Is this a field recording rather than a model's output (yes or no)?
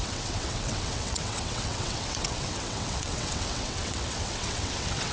no